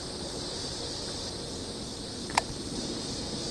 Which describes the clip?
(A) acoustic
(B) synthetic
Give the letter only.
A